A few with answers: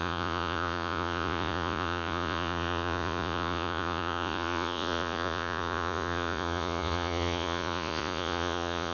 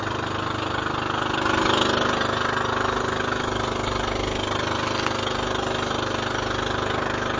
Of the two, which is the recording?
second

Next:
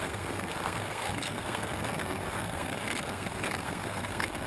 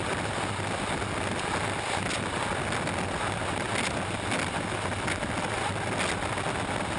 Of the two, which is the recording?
second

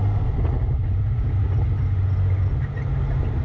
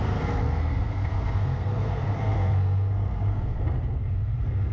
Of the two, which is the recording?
first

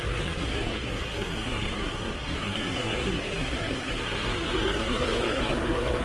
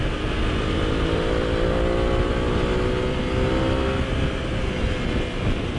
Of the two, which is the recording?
second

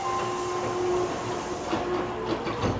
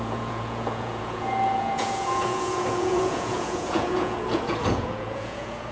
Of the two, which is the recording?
first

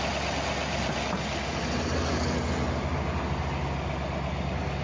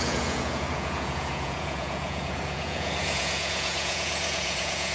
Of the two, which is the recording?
first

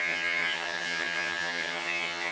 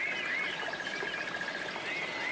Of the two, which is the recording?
second